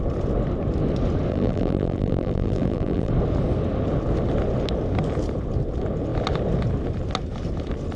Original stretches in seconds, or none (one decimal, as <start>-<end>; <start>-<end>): 0.0-1.3; 3.1-8.0